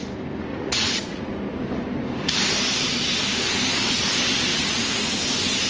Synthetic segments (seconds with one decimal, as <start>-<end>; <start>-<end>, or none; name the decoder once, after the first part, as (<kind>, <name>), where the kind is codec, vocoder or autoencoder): 0.5-1.2 (vocoder, Vocos); 4.5-5.2